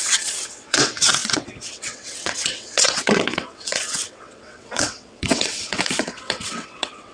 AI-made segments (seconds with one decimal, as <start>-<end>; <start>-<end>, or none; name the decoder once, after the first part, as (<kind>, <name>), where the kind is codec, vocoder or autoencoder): 0.0-7.1 (vocoder, WaveNeXt)